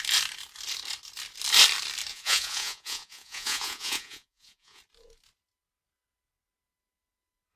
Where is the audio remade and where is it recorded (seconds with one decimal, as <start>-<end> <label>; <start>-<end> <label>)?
0.0-2.1 recorded; 2.1-4.8 remade; 4.8-7.6 recorded